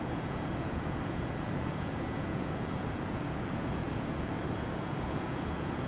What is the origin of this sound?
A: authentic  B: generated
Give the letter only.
B